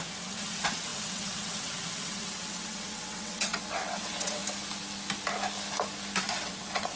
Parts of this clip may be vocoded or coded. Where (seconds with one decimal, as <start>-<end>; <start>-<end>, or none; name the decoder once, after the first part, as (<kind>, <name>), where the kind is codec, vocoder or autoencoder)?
0.0-4.4 (vocoder, WaveNeXt); 6.3-7.0